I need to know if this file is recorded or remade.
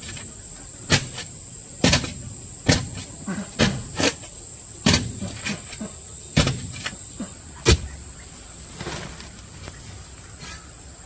remade